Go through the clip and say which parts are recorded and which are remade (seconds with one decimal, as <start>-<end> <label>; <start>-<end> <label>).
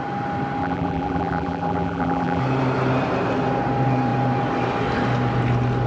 0.0-0.6 recorded; 0.6-2.4 remade; 2.4-5.9 recorded